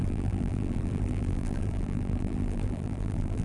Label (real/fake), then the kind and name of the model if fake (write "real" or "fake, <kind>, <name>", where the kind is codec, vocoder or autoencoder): fake, vocoder, BigVGAN v2